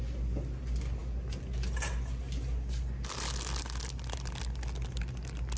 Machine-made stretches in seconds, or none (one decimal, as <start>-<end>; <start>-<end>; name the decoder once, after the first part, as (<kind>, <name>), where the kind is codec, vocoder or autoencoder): none